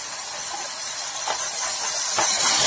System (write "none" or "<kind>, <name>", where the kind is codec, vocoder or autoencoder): none